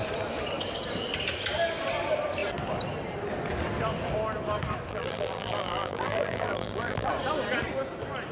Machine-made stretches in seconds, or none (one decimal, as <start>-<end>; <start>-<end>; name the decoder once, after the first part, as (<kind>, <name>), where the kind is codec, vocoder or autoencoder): 4.9-7.1 (vocoder, BigVGAN v2)